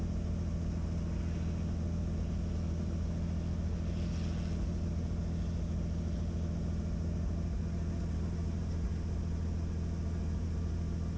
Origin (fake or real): real